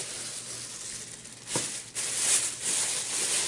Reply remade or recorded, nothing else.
recorded